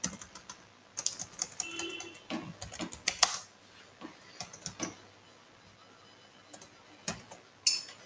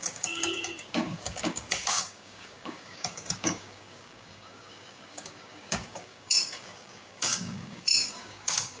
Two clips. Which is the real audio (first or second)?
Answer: first